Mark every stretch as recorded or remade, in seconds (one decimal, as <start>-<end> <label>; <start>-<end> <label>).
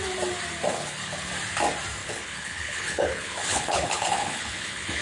0.0-0.7 recorded; 0.7-1.3 remade; 1.3-2.0 recorded; 2.0-5.0 remade